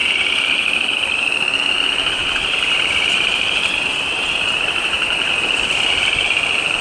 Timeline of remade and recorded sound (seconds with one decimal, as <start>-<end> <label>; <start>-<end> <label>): 0.0-0.5 remade; 0.5-2.2 recorded; 2.2-5.8 remade; 5.8-6.8 recorded